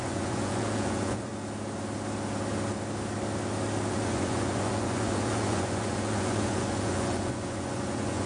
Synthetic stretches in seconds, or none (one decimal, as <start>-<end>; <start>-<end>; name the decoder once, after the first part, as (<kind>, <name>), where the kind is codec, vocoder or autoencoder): 0.0-1.3 (vocoder, Vocos); 3.9-8.3

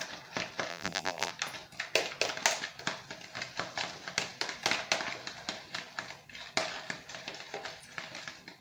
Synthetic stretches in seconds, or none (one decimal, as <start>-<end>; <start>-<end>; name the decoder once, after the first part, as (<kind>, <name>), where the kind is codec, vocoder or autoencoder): 0.7-1.3 (vocoder, BigVGAN v2)

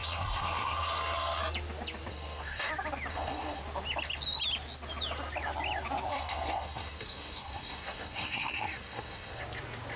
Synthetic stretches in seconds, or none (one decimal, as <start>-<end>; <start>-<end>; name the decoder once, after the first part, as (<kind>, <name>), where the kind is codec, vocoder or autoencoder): 0.0-1.4 (codec, SNAC); 2.1-2.7; 3.1-3.6; 6.1-9.4

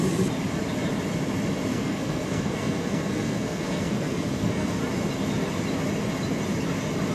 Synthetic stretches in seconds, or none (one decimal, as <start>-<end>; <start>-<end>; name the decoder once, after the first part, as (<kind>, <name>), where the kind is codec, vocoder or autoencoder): 1.7-4.8 (codec, SNAC)

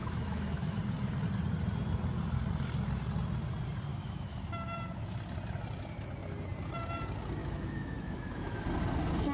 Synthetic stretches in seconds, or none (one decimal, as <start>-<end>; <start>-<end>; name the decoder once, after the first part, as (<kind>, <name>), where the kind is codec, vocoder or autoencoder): 0.0-0.8 (autoencoder, DAC-VAE); 3.9-4.4; 7.4-8.6

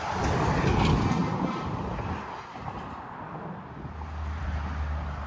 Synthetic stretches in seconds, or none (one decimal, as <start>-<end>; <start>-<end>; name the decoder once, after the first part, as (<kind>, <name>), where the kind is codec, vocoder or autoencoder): none